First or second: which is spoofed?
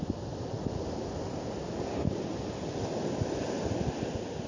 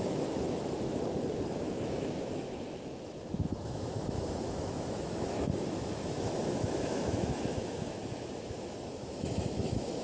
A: second